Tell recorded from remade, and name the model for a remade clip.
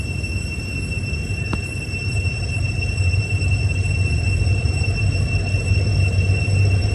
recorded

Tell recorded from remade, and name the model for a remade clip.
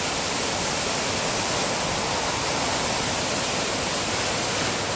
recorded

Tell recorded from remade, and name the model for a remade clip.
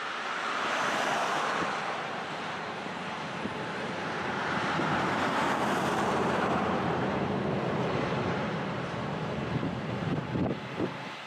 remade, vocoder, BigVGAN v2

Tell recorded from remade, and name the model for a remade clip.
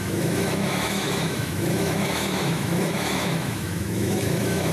remade, autoencoder, DAC-VAE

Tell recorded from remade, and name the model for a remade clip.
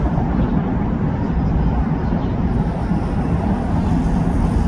recorded